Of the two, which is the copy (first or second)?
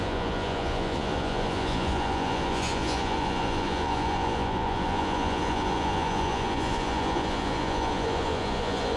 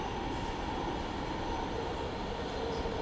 first